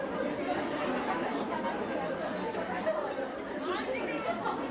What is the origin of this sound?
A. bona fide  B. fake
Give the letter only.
A